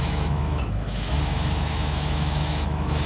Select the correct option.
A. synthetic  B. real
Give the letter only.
A